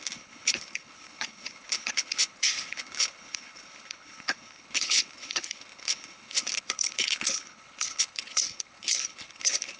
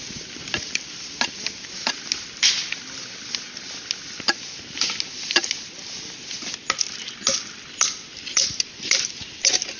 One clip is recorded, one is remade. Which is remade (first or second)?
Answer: first